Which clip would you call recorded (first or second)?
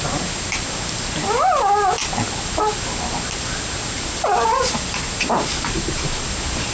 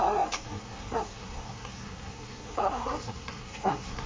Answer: first